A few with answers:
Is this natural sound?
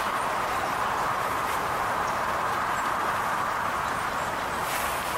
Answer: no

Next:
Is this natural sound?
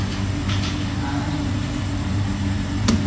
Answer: no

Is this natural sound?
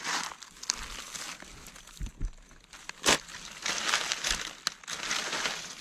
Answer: yes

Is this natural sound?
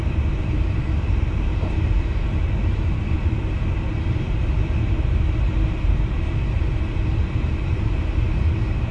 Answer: no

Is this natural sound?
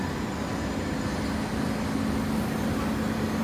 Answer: yes